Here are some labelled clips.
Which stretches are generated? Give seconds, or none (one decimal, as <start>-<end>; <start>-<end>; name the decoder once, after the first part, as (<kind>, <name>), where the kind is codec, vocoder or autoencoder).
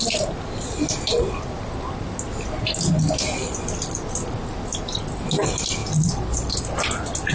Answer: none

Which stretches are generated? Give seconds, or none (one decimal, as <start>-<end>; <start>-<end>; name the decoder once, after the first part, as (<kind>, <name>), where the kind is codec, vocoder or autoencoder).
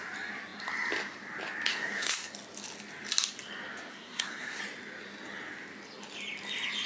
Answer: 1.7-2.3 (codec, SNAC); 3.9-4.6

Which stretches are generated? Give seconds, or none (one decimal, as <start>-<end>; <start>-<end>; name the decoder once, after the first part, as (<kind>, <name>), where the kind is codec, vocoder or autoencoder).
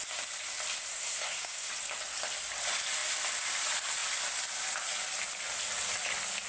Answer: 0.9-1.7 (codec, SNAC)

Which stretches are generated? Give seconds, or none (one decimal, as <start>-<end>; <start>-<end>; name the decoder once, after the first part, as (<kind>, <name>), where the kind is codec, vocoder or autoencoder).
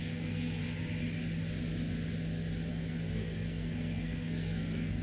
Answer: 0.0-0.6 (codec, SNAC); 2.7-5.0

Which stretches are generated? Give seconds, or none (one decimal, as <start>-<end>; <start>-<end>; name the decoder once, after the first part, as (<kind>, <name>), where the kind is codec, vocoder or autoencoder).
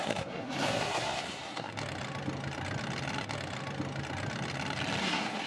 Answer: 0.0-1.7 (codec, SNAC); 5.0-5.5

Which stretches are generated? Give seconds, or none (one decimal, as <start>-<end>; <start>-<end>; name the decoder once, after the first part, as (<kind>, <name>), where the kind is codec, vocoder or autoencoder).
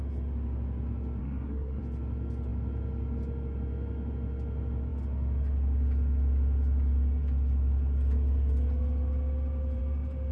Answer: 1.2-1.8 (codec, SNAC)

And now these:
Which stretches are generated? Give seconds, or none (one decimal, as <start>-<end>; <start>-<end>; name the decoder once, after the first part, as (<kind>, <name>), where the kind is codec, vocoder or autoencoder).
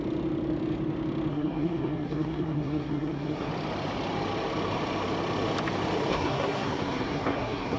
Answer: 1.3-3.5 (codec, SNAC); 6.1-7.8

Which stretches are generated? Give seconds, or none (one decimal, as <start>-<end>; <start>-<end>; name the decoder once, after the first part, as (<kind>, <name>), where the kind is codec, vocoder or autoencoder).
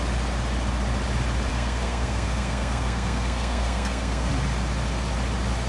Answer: 1.5-4.3 (codec, SNAC)